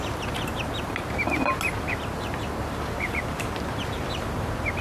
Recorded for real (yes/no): yes